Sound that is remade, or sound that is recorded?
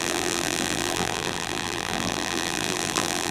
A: remade